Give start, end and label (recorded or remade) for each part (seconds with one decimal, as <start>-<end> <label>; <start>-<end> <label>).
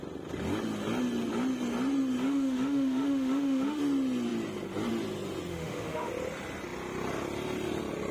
0.0-2.2 recorded; 2.2-3.8 remade; 3.8-5.5 recorded; 5.5-6.1 remade; 6.1-8.1 recorded